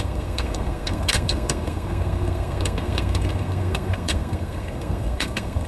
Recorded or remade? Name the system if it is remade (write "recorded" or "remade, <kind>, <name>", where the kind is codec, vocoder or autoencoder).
remade, codec, SNAC